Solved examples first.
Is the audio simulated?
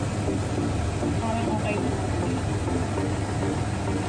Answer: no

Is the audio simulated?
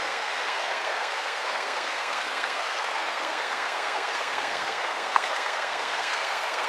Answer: yes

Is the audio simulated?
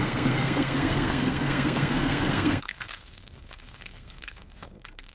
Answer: yes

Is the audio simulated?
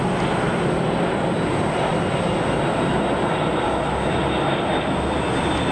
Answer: no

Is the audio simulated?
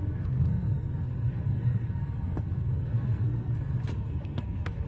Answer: yes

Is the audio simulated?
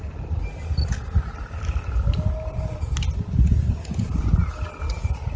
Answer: no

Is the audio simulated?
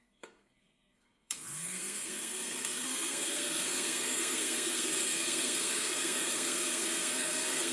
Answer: yes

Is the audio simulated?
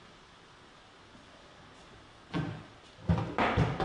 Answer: no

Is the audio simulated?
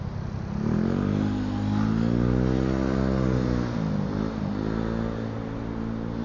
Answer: no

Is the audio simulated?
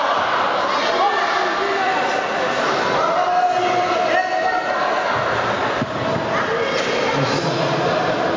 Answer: no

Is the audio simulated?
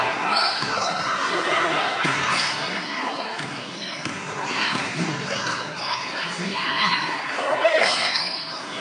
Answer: yes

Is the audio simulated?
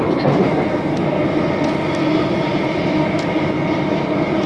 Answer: no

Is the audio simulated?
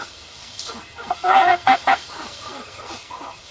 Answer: yes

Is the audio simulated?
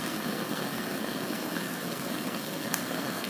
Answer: yes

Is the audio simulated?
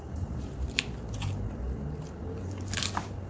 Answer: no